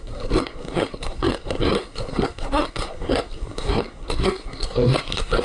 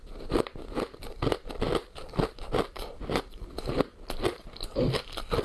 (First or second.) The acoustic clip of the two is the second